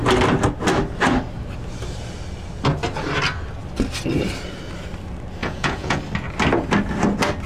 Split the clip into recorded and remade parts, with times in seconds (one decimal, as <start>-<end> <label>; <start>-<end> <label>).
0.0-5.4 recorded; 5.4-6.0 remade; 6.0-7.5 recorded